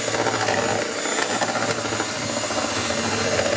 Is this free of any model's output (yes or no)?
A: yes